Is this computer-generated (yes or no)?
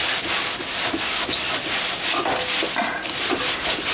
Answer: no